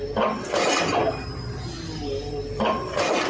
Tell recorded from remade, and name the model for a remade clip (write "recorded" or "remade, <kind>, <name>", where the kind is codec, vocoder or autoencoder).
recorded